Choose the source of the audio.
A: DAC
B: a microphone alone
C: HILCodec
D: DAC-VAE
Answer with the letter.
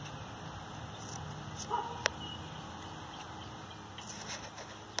B